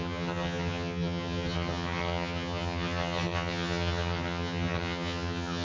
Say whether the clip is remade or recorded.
remade